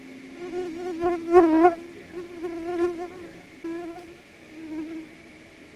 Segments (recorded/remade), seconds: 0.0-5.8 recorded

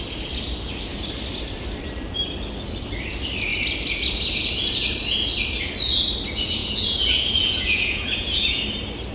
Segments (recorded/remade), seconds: 0.0-6.6 recorded; 6.6-8.6 remade; 8.6-9.1 recorded

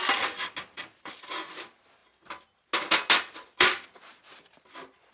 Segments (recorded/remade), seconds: 0.0-5.1 recorded

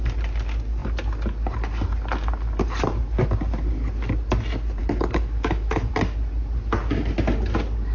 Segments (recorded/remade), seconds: 0.0-4.8 recorded; 4.8-5.9 remade; 5.9-7.9 recorded

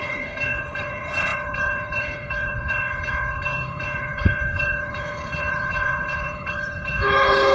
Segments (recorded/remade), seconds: 0.0-7.5 remade

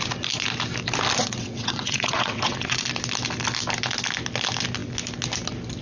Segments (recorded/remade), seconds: 0.0-1.2 recorded; 1.2-2.8 remade; 2.8-5.8 recorded

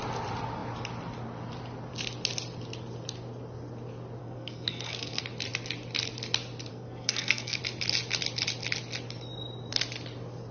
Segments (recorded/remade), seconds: 0.0-4.2 recorded; 4.2-5.2 remade; 5.2-6.7 recorded; 6.7-7.6 remade; 7.6-10.5 recorded

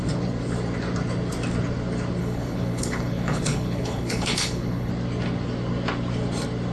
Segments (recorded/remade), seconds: 0.0-2.2 recorded; 2.2-4.9 remade; 4.9-6.7 recorded